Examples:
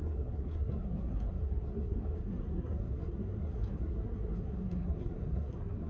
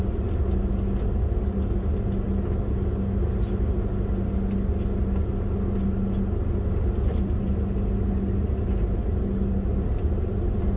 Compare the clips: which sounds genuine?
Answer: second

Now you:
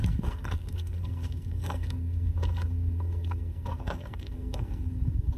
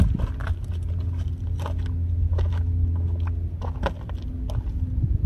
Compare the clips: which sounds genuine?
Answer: second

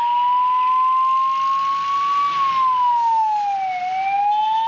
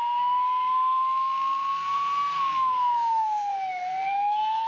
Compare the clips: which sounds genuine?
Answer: first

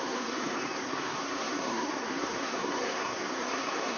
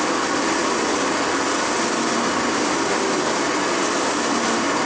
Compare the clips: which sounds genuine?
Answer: second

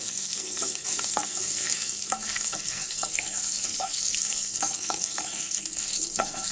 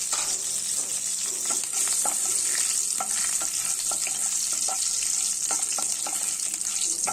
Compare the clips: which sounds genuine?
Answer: second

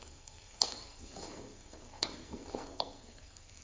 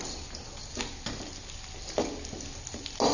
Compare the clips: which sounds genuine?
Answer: second